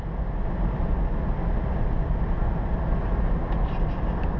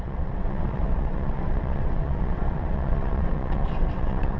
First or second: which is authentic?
first